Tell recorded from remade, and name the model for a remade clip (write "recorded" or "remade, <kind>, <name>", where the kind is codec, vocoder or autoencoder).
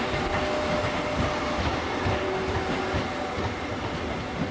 recorded